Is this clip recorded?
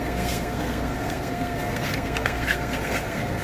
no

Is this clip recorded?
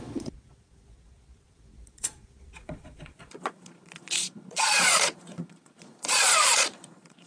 no